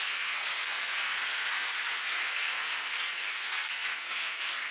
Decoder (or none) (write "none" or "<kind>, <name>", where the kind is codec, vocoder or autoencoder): codec, SNAC